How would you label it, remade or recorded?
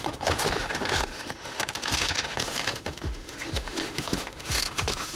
remade